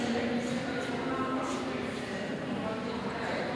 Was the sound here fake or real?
real